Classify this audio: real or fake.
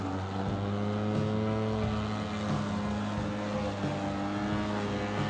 real